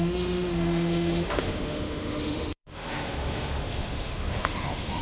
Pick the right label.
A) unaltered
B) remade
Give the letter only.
B